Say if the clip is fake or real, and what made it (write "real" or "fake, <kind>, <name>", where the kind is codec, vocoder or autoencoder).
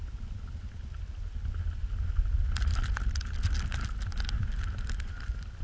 real